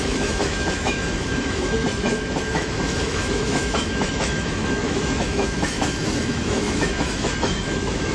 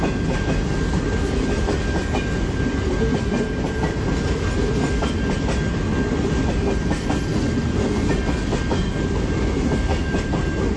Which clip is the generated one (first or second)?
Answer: first